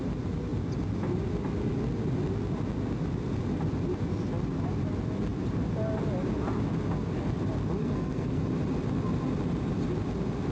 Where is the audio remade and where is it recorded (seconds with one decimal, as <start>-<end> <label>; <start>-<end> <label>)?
0.0-7.8 recorded; 7.8-8.4 remade; 8.4-10.5 recorded